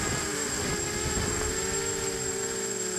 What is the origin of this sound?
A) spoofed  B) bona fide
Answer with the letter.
B